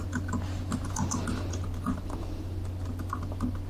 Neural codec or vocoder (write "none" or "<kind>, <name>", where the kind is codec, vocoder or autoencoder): none